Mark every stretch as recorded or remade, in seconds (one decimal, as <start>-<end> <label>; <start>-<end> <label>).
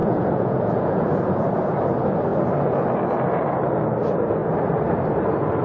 0.0-1.3 remade; 1.3-5.6 recorded